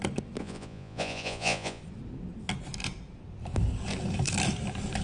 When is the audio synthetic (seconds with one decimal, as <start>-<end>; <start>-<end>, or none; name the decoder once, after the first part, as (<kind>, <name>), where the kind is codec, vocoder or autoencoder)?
0.4-1.8 (vocoder, Vocos)